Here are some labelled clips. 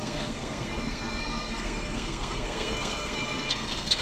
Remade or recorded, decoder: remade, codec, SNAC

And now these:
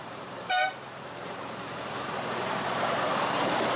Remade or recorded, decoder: remade, vocoder, BigVGAN v2